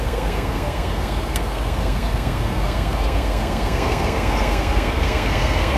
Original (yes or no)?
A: no